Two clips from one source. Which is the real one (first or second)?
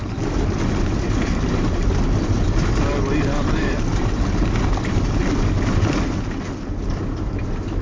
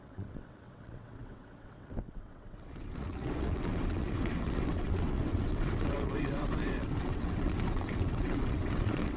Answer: first